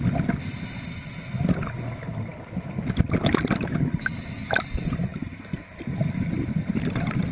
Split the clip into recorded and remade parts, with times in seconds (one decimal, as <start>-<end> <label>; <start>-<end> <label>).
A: 0.0-2.3 recorded; 2.3-4.5 remade; 4.5-7.3 recorded